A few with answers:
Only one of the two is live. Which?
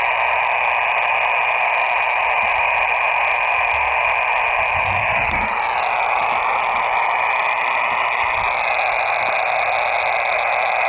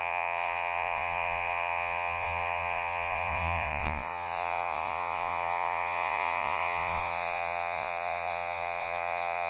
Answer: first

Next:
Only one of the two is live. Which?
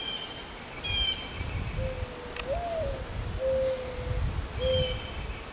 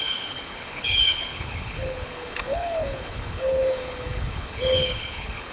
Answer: first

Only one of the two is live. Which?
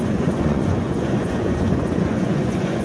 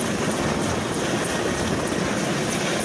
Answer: second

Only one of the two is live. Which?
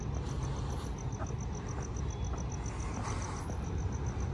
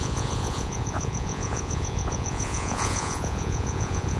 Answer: first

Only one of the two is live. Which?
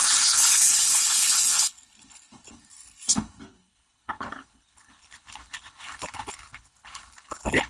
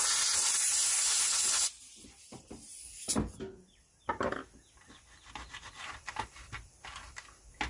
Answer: second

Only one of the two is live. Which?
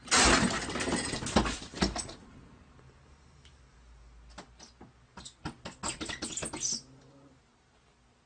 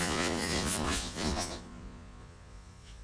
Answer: first